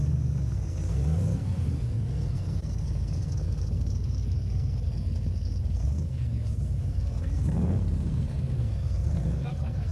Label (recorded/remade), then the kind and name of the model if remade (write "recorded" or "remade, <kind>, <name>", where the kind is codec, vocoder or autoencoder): remade, codec, SNAC